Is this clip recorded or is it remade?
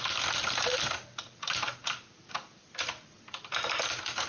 recorded